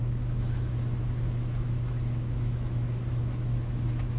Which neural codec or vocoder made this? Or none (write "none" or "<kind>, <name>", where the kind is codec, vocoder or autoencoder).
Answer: autoencoder, DAC-VAE